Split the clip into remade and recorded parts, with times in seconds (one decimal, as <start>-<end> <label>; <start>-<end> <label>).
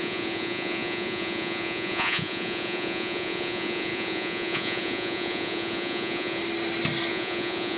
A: 0.0-6.4 remade; 6.4-7.1 recorded; 7.1-7.8 remade